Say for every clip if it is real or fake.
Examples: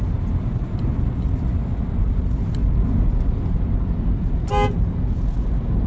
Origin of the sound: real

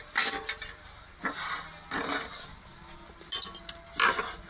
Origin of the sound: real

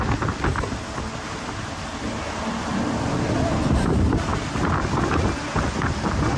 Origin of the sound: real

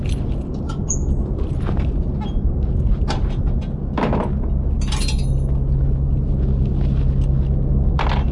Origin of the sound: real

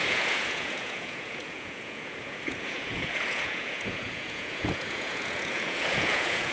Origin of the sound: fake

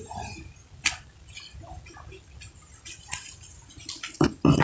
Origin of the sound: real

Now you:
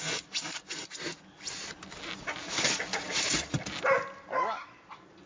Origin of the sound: real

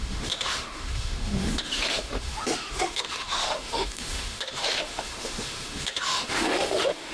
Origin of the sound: fake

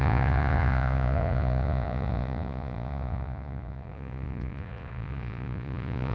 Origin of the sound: fake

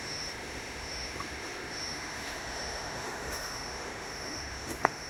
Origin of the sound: fake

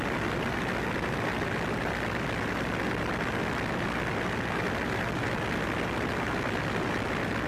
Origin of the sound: real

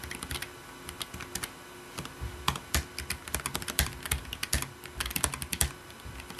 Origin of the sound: real